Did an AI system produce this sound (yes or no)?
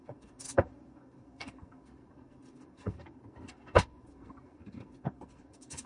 yes